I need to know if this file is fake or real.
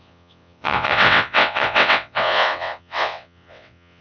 fake